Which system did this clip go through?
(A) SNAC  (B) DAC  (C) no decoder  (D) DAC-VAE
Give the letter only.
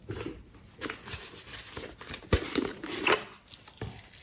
C